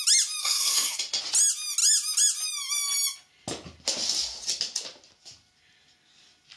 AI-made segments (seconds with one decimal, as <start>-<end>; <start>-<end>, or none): 0.4-1.2